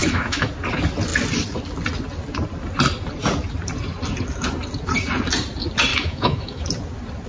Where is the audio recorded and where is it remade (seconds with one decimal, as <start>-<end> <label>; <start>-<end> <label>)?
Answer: 0.0-0.5 remade; 0.5-5.9 recorded; 5.9-6.6 remade; 6.6-7.3 recorded